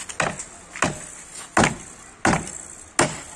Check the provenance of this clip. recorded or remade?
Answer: recorded